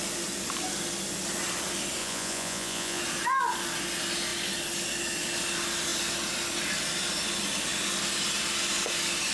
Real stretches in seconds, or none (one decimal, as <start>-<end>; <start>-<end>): 0.0-2.0; 3.0-9.3